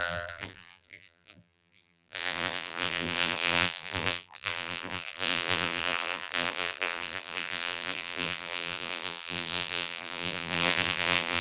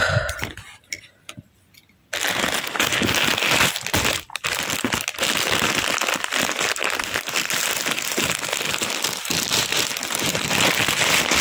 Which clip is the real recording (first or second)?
second